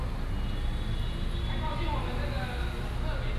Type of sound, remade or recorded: recorded